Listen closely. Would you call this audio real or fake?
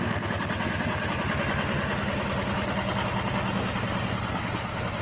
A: real